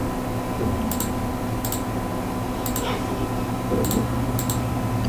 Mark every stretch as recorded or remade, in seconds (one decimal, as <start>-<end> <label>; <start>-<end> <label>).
0.0-5.1 recorded